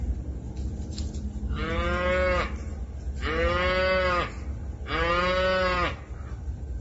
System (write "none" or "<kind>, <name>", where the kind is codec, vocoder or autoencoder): none